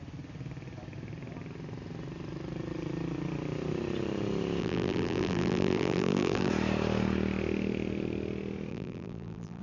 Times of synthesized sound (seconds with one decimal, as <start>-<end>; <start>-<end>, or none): 4.6-6.5; 8.7-9.6